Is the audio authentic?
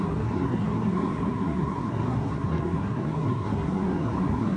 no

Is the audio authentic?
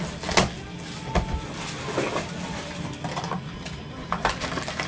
yes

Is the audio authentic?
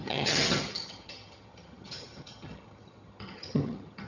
no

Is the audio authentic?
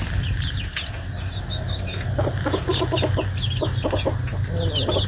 yes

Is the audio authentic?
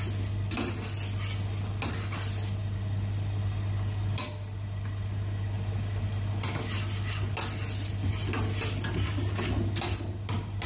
yes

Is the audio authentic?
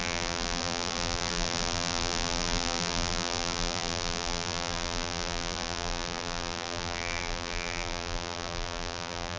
no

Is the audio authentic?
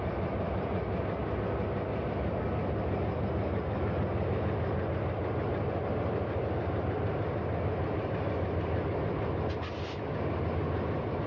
yes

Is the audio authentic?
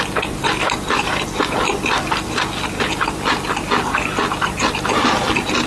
yes